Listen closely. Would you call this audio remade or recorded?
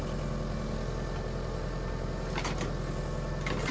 recorded